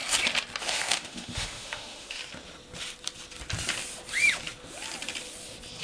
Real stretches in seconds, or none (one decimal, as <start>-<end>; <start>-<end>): 0.0-0.6; 2.2-5.8